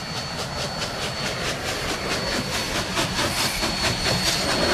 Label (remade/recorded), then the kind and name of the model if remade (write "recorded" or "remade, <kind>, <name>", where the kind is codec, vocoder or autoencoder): recorded